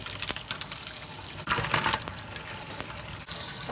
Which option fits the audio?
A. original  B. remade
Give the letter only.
A